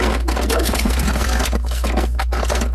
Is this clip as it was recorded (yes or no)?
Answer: no